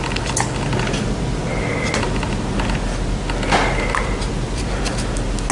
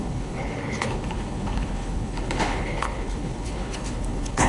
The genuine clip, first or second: first